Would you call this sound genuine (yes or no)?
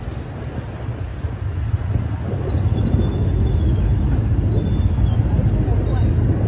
yes